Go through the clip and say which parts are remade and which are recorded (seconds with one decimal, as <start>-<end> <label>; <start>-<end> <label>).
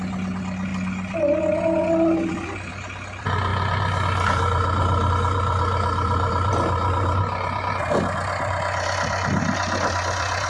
0.0-10.5 recorded